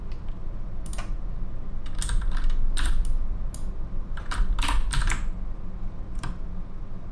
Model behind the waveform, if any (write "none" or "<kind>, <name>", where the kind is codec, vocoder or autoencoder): none